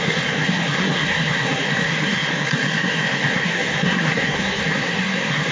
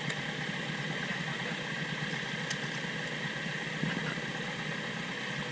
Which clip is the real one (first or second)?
second